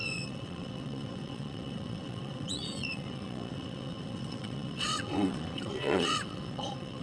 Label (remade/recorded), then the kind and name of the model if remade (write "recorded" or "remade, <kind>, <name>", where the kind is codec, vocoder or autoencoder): remade, vocoder, WaveNeXt